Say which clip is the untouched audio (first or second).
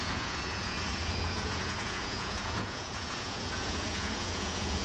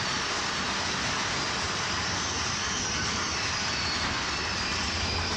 second